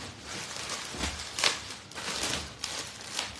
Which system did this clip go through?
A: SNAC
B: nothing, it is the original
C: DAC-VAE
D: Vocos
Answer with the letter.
B